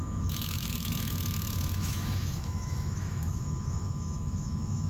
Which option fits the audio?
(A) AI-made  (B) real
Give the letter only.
A